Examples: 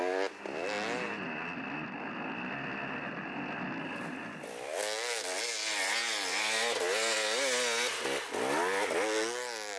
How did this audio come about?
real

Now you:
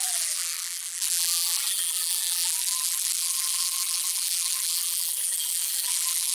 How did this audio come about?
fake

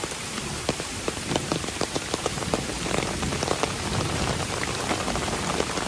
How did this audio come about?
fake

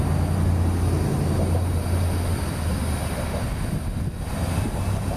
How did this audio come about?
real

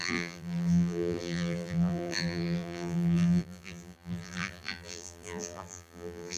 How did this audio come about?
fake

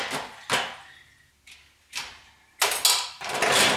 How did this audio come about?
real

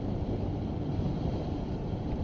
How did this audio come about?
fake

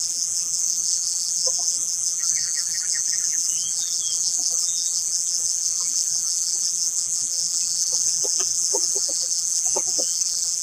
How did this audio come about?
fake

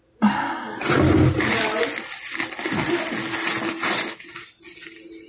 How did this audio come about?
real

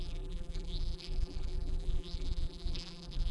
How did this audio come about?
fake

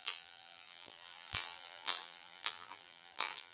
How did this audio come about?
fake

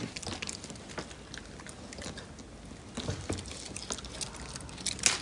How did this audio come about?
real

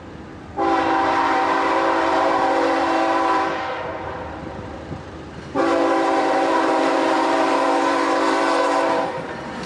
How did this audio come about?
fake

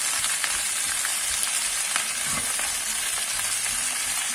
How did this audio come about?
real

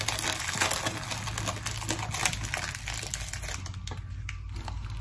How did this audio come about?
real